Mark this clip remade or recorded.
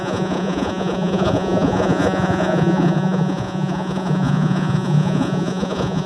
remade